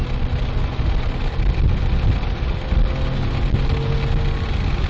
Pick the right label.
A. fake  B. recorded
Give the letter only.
B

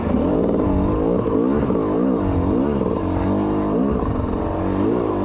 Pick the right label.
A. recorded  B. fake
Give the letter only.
A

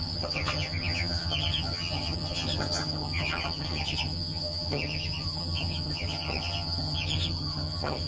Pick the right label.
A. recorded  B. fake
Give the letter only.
B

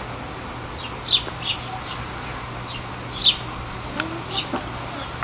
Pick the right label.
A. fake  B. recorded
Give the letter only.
B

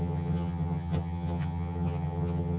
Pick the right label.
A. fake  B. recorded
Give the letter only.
A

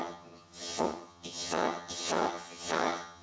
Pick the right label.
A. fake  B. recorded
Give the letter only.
A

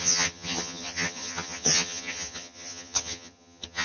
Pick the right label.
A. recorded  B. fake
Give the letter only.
B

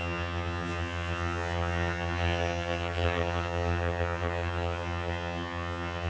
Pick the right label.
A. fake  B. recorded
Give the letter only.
A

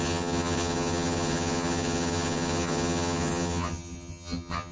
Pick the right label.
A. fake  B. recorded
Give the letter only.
A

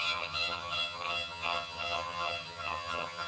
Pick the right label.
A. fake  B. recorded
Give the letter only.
A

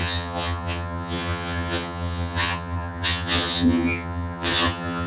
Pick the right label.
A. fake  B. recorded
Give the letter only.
A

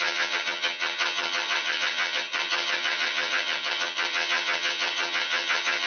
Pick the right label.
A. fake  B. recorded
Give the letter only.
A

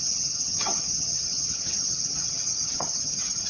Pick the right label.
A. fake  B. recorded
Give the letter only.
A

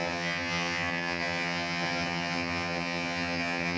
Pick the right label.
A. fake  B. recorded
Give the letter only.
A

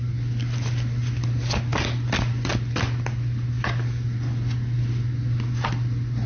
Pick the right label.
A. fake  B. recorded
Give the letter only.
B